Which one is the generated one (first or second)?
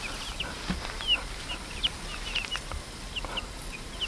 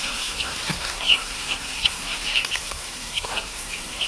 second